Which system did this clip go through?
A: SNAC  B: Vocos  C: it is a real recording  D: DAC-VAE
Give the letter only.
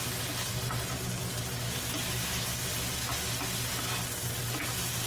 C